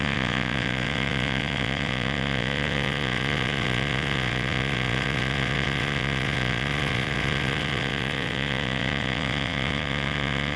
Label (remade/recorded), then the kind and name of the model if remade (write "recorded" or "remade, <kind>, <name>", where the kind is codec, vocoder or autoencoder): remade, vocoder, WaveNeXt